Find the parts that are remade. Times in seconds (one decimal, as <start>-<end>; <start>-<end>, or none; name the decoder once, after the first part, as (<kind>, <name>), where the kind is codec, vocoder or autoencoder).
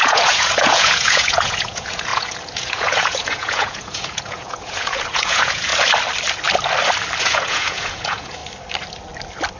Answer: 0.0-5.7 (vocoder, Vocos); 7.2-8.4